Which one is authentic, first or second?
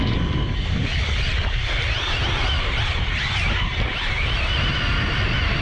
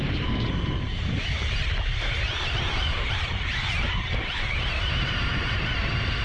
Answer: first